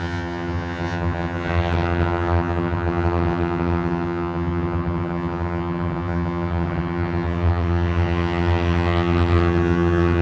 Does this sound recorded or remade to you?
remade